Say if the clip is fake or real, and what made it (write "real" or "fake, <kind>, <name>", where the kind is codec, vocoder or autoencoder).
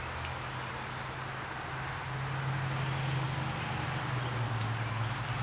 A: real